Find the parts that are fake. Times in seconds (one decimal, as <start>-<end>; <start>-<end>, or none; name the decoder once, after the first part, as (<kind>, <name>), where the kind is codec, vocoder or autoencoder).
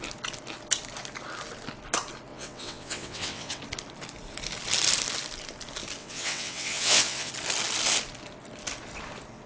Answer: 2.3-3.6 (vocoder, WaveNeXt); 6.0-7.3